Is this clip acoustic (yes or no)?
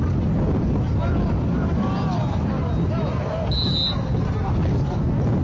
yes